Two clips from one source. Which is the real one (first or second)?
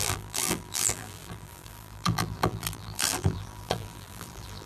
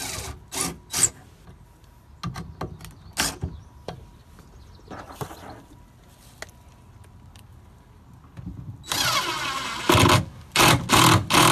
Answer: second